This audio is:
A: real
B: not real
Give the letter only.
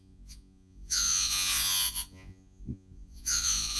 B